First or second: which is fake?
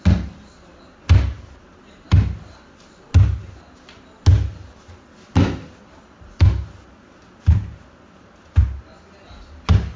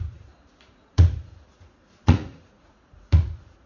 second